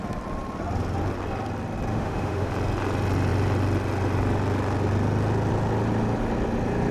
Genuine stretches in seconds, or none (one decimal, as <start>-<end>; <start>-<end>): 0.0-1.9; 2.5-6.9